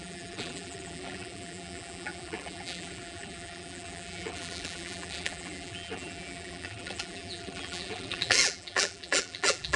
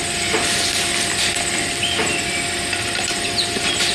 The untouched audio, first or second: second